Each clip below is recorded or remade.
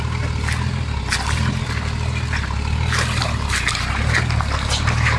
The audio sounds recorded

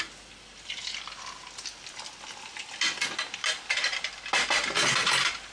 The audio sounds recorded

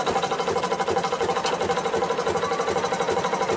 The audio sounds recorded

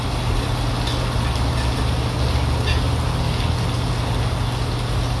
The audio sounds recorded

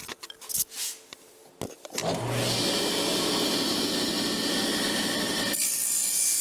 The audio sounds recorded